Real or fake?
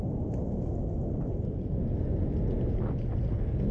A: real